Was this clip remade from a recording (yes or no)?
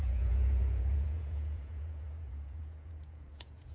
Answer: yes